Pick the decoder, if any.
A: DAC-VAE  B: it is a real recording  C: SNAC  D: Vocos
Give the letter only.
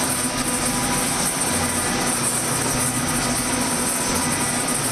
B